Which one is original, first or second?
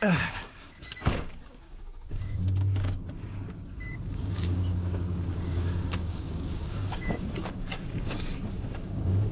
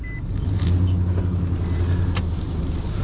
second